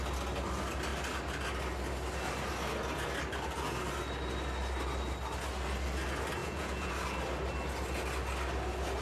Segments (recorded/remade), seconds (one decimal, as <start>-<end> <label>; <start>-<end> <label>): 0.0-6.4 recorded; 6.4-6.9 remade; 6.9-9.0 recorded